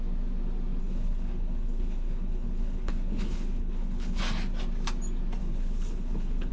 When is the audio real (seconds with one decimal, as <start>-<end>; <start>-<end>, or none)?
0.0-0.8; 4.2-5.4